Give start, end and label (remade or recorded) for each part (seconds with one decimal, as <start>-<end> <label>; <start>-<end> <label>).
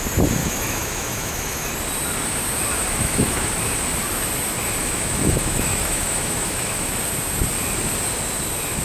0.0-0.4 recorded; 0.4-1.7 remade; 1.7-2.8 recorded; 2.8-3.5 remade; 3.5-4.8 recorded; 4.8-7.0 remade; 7.0-8.8 recorded